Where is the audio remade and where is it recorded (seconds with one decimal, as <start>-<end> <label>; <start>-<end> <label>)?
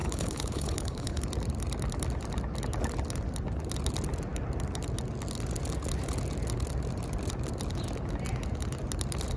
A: 0.0-1.2 remade; 1.2-9.4 recorded